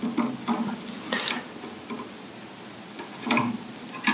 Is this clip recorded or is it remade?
recorded